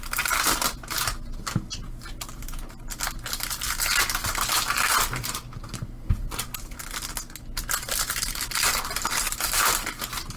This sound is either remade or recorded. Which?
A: recorded